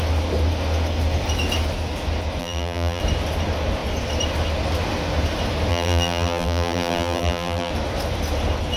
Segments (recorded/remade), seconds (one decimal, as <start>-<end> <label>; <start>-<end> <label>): 0.0-2.4 recorded; 2.4-3.0 remade; 3.0-5.7 recorded; 5.7-7.7 remade; 7.7-8.8 recorded